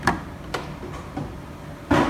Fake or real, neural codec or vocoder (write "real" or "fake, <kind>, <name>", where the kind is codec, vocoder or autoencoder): real